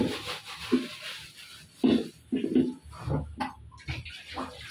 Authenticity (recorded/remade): recorded